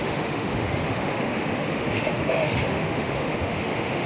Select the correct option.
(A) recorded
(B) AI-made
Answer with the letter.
B